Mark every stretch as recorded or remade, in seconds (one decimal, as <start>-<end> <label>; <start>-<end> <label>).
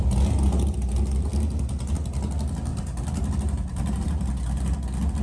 0.0-2.7 recorded; 2.7-4.4 remade; 4.4-5.2 recorded